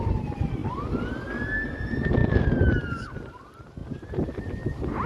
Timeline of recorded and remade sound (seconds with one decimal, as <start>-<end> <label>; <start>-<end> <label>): 0.0-5.1 recorded

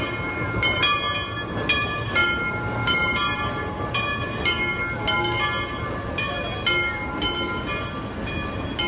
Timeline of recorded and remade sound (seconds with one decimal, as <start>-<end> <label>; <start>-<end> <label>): 0.0-8.9 recorded

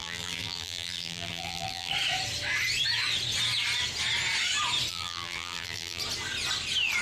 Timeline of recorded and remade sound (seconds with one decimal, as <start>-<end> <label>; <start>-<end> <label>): 0.0-1.9 remade; 1.9-4.9 recorded; 4.9-6.0 remade; 6.0-7.0 recorded